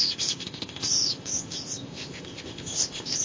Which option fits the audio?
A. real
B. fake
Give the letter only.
B